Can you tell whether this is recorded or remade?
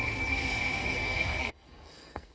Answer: remade